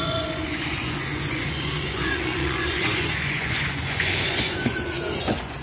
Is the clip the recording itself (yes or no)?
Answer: no